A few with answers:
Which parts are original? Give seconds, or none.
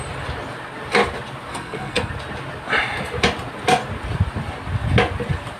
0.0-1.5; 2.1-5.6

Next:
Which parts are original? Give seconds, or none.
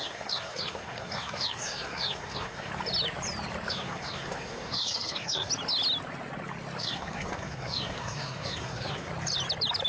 2.7-3.7; 5.5-6.8; 9.1-9.9